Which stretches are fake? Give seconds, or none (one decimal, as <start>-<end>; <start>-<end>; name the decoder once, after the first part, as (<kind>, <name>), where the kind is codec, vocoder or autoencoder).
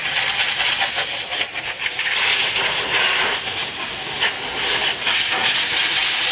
5.4-6.3 (vocoder, BigVGAN v2)